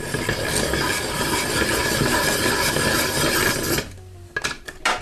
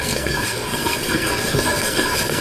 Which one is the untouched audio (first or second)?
first